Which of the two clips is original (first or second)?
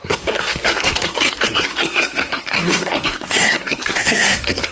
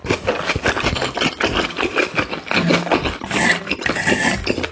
second